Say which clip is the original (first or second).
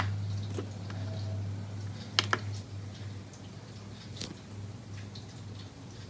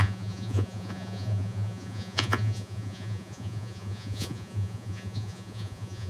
first